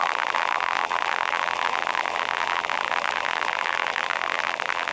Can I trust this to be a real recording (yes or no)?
no